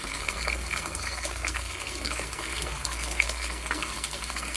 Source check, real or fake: fake